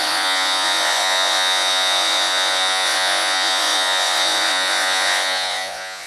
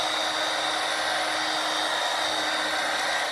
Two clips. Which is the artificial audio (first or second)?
first